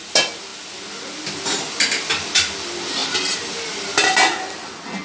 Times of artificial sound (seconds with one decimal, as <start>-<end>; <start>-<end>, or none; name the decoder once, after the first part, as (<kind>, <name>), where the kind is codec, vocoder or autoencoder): none